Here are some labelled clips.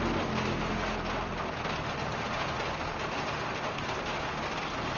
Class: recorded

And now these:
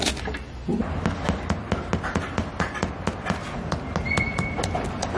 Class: recorded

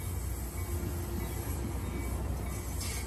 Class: recorded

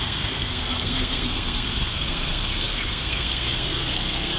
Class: remade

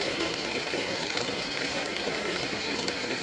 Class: remade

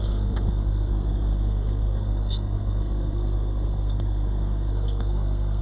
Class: remade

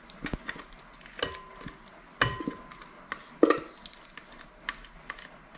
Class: recorded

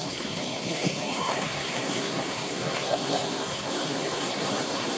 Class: remade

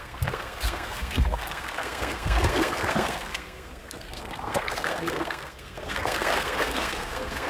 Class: remade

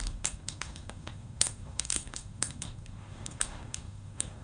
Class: remade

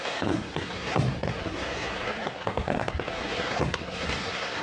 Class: remade